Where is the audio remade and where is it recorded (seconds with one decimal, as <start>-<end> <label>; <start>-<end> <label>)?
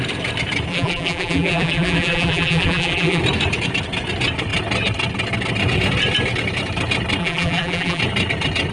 0.0-0.7 recorded; 0.7-3.2 remade; 3.2-7.2 recorded; 7.2-8.0 remade; 8.0-8.7 recorded